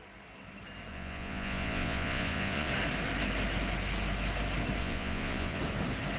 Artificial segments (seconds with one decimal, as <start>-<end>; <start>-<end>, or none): 0.9-2.7; 4.8-5.6